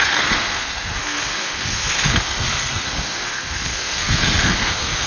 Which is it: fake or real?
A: fake